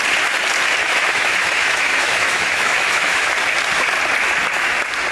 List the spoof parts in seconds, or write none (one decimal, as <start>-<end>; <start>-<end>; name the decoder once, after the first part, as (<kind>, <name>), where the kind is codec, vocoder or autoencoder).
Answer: 0.8-3.3 (autoencoder, DAC-VAE)